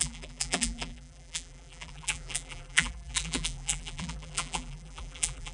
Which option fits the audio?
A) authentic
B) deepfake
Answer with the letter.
B